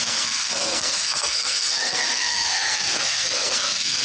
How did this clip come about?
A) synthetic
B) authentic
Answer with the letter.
A